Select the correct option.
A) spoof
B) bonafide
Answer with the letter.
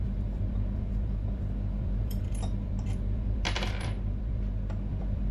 A